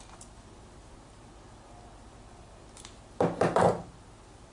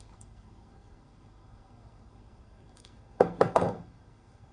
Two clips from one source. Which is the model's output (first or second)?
second